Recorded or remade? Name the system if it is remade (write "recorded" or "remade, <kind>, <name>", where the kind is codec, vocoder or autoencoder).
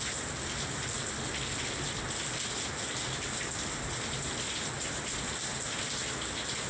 recorded